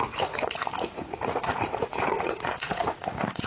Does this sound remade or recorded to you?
remade